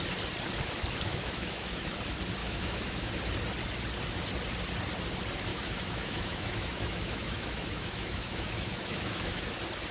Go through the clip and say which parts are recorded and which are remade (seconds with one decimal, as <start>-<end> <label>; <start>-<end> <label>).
0.0-1.1 recorded; 1.1-2.0 remade; 2.0-2.4 recorded; 2.4-3.1 remade; 3.1-5.5 recorded; 5.5-9.4 remade; 9.4-9.9 recorded